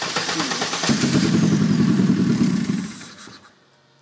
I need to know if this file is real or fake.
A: fake